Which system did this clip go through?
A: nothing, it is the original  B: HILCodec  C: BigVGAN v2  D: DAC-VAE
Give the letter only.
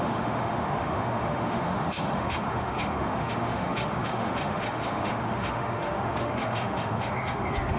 D